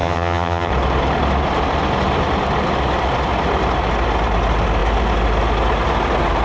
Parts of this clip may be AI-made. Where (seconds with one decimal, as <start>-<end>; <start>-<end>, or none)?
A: 0.0-0.7